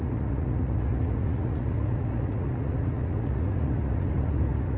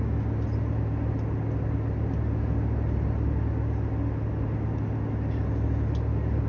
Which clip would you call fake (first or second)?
first